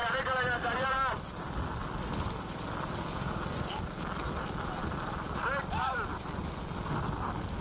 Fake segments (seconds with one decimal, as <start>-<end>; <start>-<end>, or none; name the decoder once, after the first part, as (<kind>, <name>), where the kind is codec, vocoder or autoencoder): 3.2-3.8 (codec, DAC)